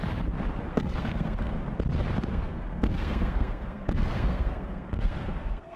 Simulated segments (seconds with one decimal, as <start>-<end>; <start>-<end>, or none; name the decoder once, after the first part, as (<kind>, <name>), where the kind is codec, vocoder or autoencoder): 0.7-1.6 (codec, SNAC); 2.3-5.8